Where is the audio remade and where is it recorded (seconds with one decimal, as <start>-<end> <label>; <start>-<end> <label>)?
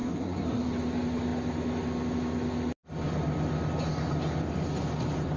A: 0.0-0.7 remade; 0.7-5.4 recorded